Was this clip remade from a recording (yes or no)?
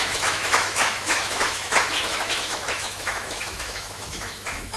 yes